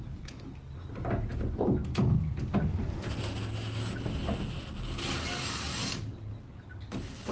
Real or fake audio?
real